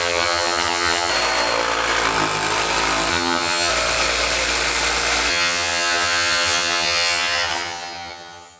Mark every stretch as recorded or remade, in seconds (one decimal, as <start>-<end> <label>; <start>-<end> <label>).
0.0-1.1 remade; 1.1-3.1 recorded; 3.1-3.7 remade; 3.7-5.3 recorded; 5.3-8.6 remade